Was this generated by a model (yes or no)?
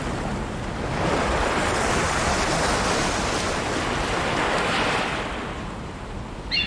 no